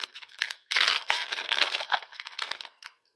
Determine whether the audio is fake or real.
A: fake